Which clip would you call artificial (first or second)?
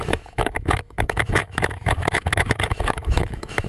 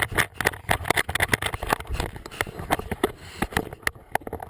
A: first